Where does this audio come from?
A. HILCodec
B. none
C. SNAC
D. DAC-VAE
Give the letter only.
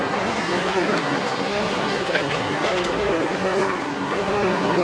C